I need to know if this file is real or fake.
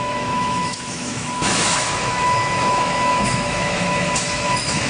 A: fake